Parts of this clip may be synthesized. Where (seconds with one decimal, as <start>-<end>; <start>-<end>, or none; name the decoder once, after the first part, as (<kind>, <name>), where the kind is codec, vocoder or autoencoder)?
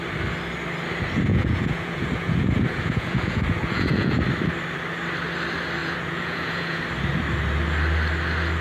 1.3-4.2 (vocoder, Vocos); 5.8-6.8